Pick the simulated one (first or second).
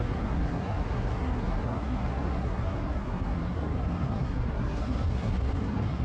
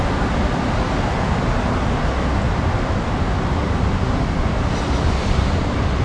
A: first